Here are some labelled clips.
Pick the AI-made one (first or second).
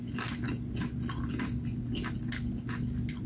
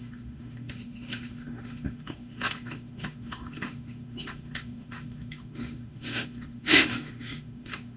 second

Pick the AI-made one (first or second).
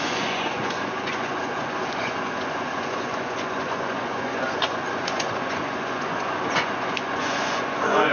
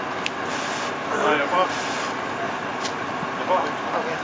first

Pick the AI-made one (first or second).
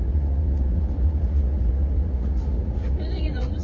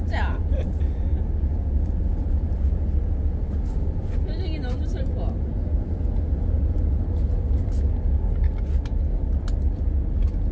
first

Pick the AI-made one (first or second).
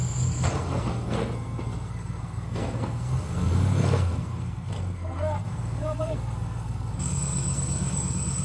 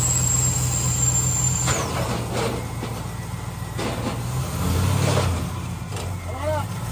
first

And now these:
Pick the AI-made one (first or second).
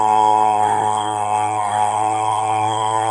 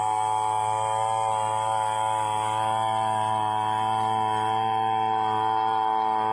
first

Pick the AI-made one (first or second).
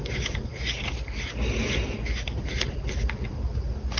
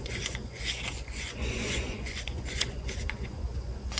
second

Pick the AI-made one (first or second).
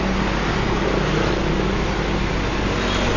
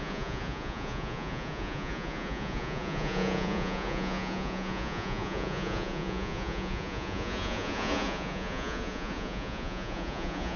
second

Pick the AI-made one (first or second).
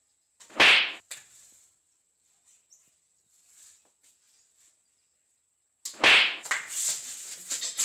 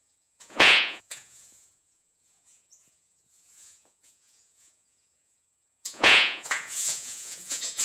second